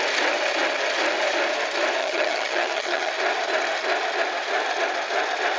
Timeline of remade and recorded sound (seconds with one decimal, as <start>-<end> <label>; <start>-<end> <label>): 0.0-2.0 recorded; 2.0-3.1 remade; 3.1-5.6 recorded